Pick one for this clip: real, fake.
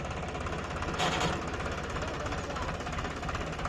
real